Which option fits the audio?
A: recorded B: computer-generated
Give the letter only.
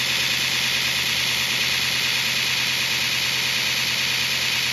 A